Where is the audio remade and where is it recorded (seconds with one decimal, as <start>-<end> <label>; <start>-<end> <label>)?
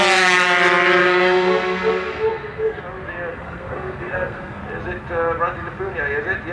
0.0-1.0 recorded; 1.0-2.8 remade; 2.8-3.3 recorded; 3.3-4.6 remade; 4.6-6.5 recorded